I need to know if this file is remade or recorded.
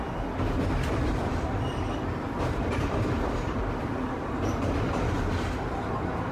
remade